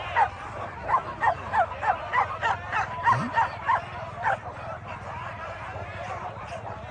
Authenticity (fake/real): real